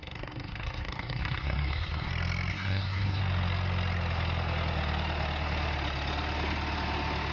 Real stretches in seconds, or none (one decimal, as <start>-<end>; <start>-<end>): 2.1-2.5; 3.2-7.3